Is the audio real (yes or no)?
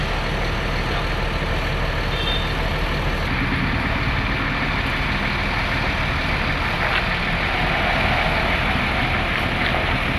yes